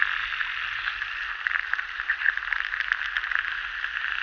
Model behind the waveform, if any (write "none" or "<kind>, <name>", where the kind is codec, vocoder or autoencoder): none